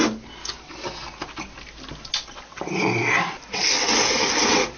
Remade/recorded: recorded